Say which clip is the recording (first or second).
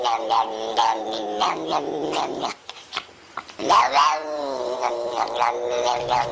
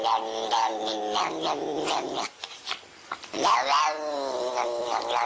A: second